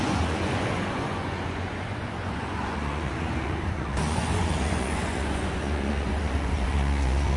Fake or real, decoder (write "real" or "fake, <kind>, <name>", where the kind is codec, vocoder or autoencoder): fake, vocoder, Vocos